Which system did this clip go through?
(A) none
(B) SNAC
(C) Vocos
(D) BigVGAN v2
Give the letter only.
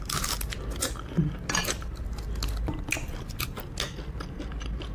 A